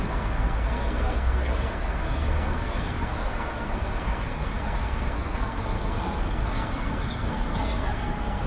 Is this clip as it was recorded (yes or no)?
no